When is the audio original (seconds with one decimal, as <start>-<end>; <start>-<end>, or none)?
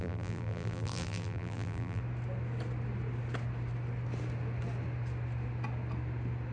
2.0-6.5